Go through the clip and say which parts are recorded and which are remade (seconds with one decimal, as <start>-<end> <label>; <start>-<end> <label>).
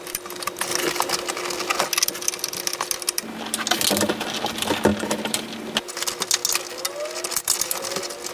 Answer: 0.0-8.3 recorded